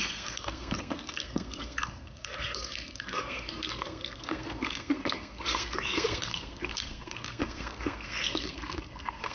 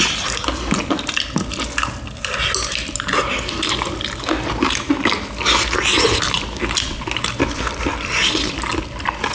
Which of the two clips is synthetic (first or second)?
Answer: first